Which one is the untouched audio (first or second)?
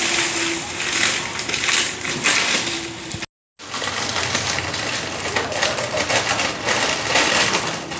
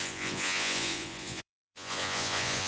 first